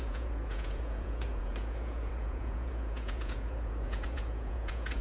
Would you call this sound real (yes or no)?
no